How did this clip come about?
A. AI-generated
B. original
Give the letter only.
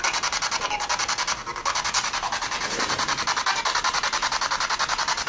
A